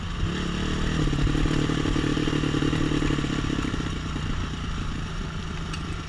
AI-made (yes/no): no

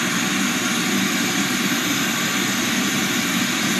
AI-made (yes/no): no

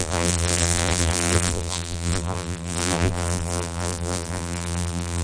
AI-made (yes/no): yes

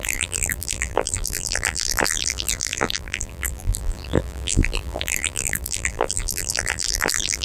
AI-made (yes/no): yes